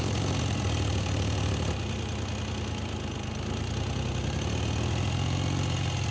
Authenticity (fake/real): real